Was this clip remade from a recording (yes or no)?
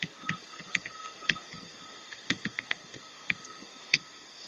yes